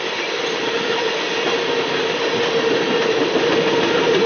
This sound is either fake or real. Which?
real